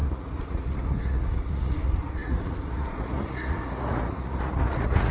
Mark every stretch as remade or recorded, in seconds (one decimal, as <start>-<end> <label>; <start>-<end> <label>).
0.0-5.1 remade

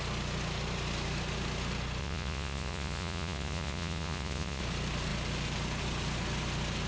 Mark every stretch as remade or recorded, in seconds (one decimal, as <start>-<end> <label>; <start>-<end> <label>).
0.0-2.0 recorded; 2.0-4.6 remade; 4.6-6.9 recorded

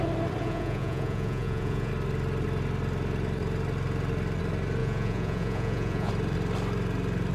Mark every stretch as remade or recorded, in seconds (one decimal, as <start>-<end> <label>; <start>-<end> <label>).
0.0-0.4 recorded; 0.4-1.9 remade; 1.9-4.8 recorded; 4.8-6.1 remade; 6.1-7.3 recorded

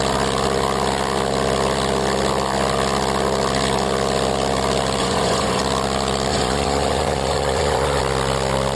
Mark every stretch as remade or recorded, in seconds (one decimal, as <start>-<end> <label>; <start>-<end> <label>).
0.0-5.0 recorded; 5.0-5.6 remade; 5.6-6.3 recorded; 6.3-8.0 remade; 8.0-8.8 recorded

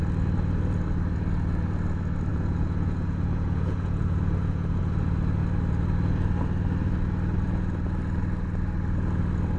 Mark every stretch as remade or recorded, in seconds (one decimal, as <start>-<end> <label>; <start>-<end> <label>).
0.0-2.3 recorded; 2.3-4.8 remade; 4.8-9.6 recorded

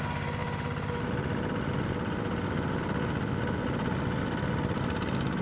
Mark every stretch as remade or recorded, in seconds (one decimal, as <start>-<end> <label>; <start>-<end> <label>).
0.0-5.4 recorded